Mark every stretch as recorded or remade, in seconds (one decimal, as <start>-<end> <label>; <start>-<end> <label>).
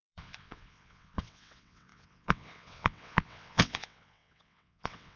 0.0-5.2 remade